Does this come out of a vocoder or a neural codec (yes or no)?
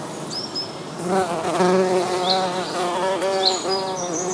no